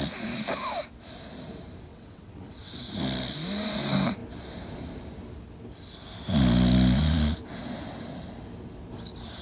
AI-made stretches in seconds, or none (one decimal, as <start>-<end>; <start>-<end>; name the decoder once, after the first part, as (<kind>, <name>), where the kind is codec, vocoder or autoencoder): 1.9-2.7 (vocoder, WaveNeXt)